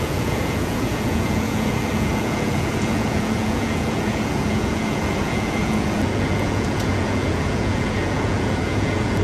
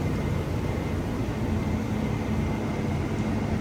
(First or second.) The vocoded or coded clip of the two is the first